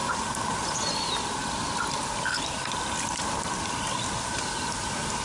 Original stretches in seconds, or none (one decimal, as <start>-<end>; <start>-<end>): 0.0-5.2

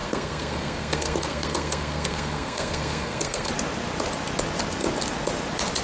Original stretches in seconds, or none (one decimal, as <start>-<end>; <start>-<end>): 3.5-5.8

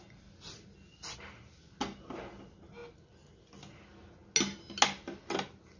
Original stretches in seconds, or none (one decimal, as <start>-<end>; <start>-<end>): 0.0-5.8

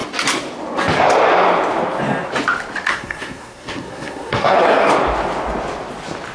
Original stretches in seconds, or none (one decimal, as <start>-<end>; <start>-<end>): 0.0-2.9; 4.9-6.3